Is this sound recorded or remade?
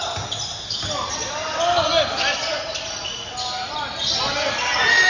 recorded